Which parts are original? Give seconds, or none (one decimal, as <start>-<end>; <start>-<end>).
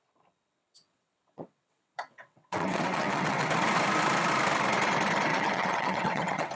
0.0-0.6; 3.5-5.3